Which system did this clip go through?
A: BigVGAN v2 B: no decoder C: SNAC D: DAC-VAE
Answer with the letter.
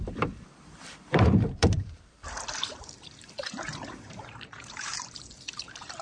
A